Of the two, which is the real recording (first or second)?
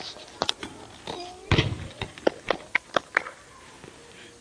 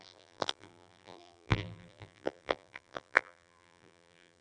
first